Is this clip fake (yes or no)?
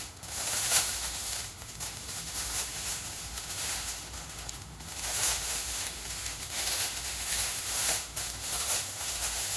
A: yes